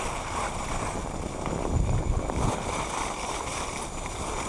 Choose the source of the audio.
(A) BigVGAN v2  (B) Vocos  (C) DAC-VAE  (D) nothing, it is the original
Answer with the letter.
A